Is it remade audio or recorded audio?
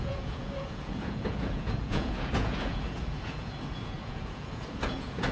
remade